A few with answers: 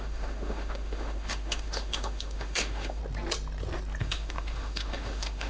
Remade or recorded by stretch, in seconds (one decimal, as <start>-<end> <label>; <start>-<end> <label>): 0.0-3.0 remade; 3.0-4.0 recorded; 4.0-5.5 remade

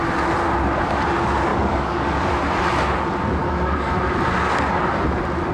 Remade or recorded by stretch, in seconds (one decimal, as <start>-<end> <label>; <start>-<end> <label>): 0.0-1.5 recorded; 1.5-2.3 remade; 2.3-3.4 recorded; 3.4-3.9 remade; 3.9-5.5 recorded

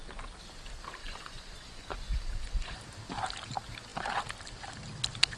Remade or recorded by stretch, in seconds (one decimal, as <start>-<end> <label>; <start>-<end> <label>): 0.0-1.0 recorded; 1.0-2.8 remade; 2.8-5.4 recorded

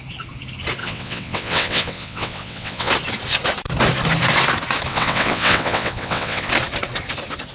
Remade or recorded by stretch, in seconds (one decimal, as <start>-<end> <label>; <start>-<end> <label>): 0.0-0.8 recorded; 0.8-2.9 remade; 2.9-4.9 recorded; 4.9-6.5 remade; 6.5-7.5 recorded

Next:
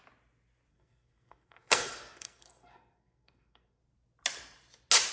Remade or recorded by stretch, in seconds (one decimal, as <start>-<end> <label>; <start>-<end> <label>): 0.0-0.7 recorded; 0.7-3.8 remade; 3.8-5.1 recorded